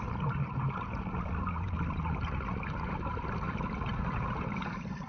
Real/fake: real